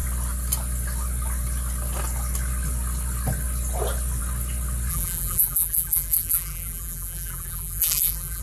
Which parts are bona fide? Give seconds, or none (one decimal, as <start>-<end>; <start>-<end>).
0.0-4.9